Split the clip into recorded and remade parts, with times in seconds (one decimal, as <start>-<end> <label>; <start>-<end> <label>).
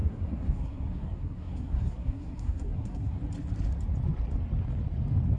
0.0-3.2 remade; 3.2-5.4 recorded